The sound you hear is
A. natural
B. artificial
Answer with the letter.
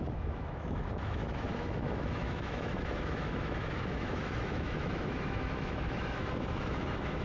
B